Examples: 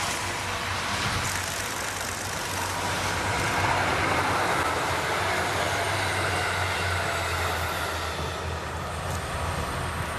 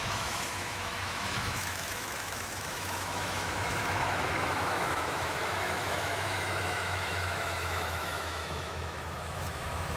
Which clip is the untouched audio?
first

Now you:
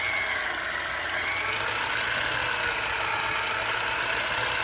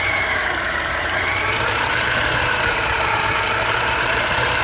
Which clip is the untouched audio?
first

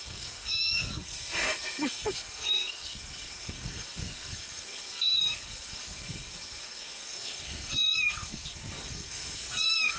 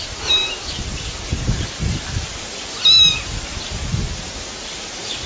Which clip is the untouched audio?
second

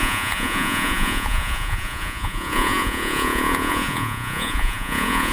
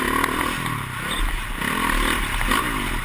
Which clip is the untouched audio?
second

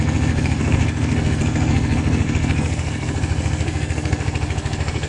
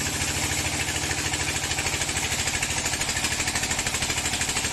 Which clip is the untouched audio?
second